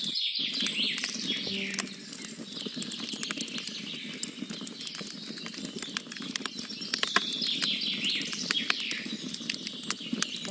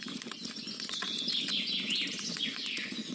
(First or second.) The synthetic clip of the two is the second